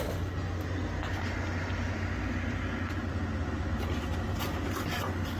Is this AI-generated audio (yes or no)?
no